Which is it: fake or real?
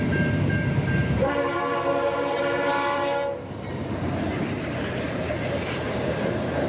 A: fake